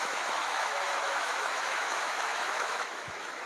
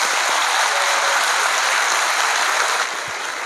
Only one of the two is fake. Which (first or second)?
first